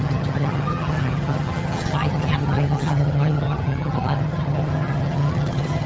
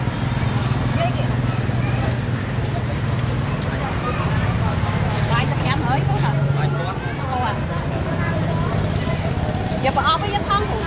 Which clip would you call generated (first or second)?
first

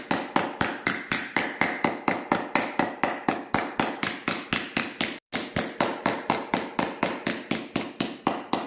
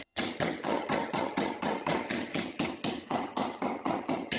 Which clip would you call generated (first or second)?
second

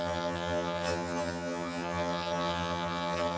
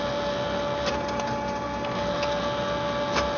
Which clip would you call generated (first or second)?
first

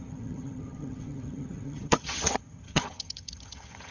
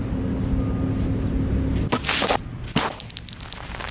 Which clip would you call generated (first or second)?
first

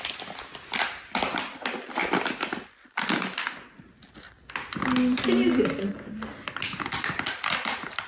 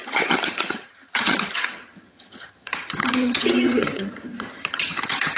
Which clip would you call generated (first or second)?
second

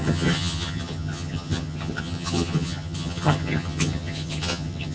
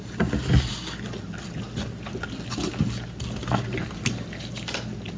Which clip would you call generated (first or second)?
first